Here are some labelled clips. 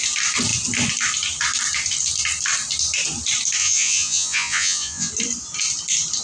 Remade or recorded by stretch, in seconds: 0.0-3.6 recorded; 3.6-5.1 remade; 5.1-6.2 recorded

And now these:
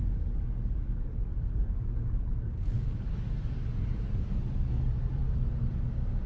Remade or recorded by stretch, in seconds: 0.0-5.2 remade; 5.2-5.7 recorded; 5.7-6.3 remade